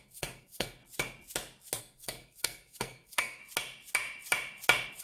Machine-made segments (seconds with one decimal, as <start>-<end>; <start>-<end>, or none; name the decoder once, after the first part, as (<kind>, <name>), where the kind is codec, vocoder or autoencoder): 0.0-0.8 (codec, SNAC); 1.8-3.4